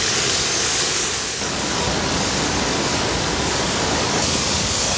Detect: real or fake fake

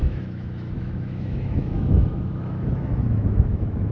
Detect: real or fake fake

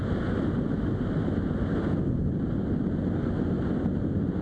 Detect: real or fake real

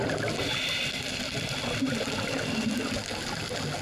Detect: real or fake real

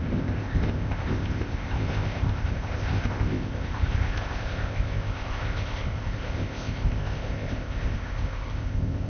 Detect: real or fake fake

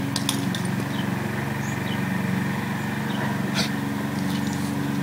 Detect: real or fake real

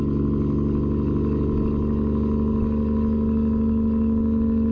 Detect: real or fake real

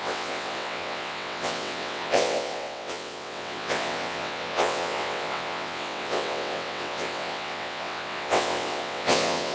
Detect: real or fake fake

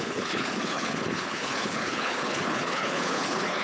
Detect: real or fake fake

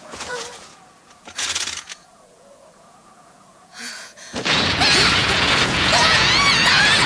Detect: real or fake fake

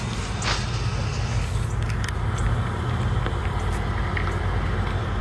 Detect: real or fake real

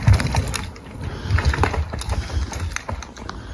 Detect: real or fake real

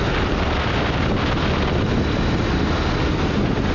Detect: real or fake real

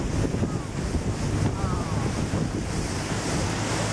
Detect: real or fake real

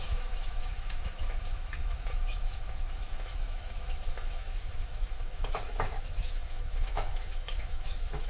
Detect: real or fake fake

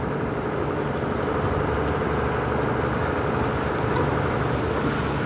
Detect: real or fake real